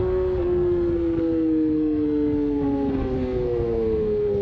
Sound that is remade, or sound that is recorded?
remade